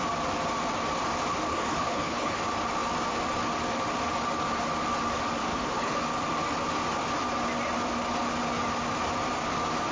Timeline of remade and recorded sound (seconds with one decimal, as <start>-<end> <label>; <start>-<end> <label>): 0.0-1.5 recorded; 1.5-2.4 remade; 2.4-5.5 recorded; 5.5-6.0 remade; 6.0-9.9 recorded